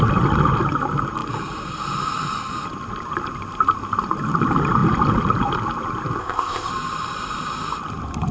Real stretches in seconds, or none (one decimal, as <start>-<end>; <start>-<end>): 0.0-6.2; 6.7-8.3